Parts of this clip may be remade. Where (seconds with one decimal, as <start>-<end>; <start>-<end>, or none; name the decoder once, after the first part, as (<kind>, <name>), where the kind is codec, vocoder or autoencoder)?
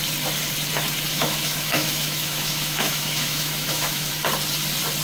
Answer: 1.1-4.1 (autoencoder, DAC-VAE)